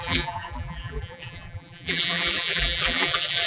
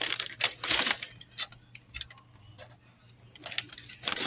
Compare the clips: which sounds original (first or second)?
second